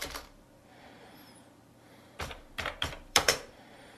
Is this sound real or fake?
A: fake